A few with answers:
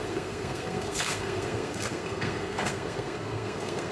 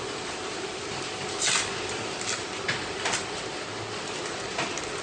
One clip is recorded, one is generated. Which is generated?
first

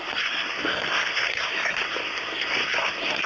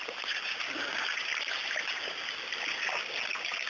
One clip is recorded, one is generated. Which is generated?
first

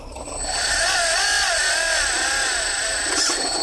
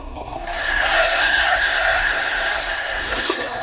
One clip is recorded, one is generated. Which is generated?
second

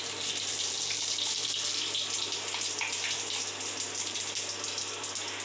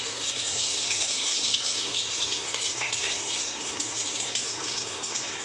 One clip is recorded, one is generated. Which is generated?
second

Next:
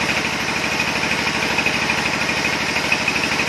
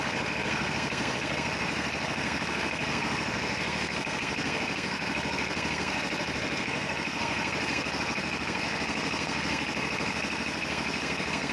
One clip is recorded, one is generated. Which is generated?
second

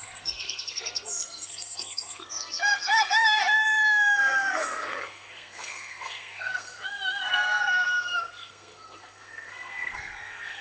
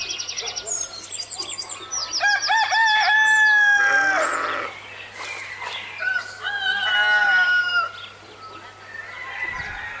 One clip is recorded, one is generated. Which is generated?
first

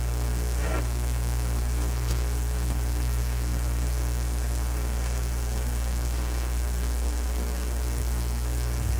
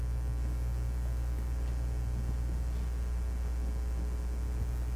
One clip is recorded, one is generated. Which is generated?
first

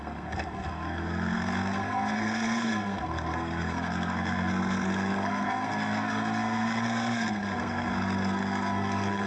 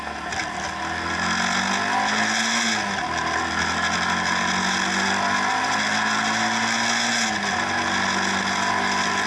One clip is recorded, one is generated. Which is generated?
first